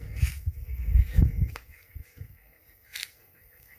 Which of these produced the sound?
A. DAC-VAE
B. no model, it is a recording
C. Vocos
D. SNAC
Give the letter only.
D